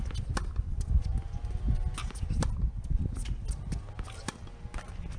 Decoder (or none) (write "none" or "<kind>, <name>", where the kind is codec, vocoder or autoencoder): none